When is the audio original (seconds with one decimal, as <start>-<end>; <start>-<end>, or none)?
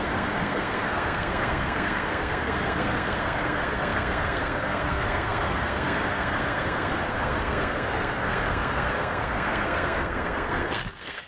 none